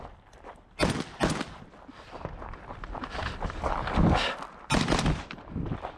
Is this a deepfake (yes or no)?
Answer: no